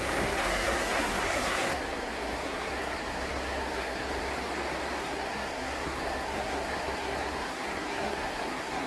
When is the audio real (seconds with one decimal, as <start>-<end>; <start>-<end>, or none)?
4.3-5.0